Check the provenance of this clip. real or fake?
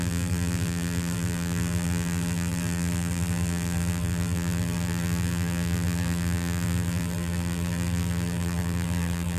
fake